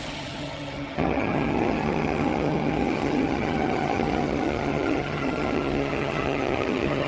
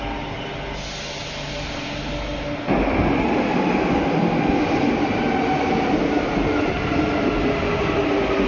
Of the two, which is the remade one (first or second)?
first